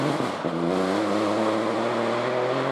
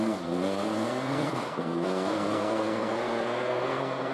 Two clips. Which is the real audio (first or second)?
first